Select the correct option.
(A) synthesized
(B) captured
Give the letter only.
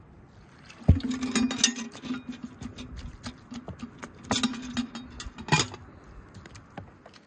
B